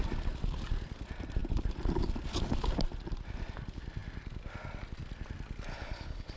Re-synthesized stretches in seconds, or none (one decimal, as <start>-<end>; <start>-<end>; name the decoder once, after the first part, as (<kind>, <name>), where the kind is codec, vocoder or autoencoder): 5.7-6.4 (codec, HILCodec)